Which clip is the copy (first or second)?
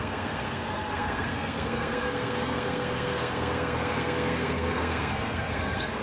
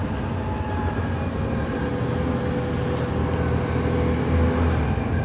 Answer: first